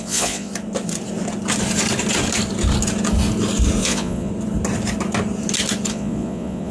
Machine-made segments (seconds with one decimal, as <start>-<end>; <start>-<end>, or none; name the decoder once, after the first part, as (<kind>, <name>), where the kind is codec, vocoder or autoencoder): 0.0-0.5 (vocoder, Vocos); 3.8-4.3; 5.9-6.7